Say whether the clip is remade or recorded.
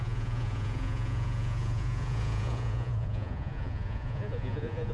remade